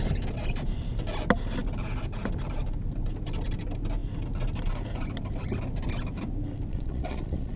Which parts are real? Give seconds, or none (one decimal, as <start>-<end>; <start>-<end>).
0.0-6.7